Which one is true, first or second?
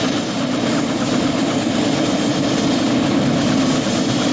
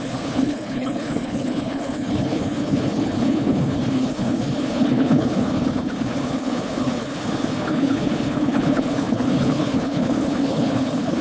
first